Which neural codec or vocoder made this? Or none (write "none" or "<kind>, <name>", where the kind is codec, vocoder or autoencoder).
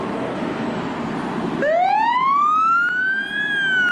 none